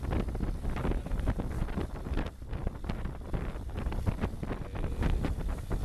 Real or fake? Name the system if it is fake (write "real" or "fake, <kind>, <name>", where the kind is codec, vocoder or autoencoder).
real